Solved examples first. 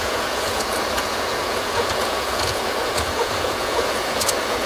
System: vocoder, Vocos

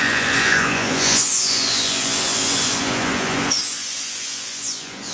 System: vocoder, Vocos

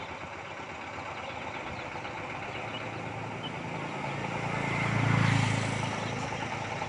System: none